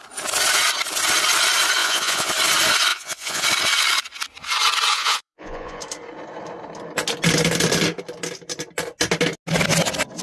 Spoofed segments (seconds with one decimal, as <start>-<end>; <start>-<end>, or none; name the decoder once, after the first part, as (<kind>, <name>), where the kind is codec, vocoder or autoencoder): 1.8-2.3 (vocoder, Vocos); 2.9-3.4; 4.9-5.8